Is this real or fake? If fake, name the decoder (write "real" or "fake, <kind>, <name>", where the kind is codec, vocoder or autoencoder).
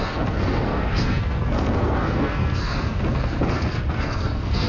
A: fake, codec, SNAC